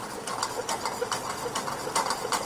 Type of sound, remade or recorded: recorded